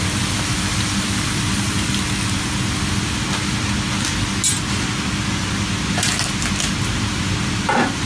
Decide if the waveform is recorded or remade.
recorded